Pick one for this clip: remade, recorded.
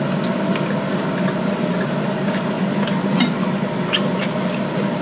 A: recorded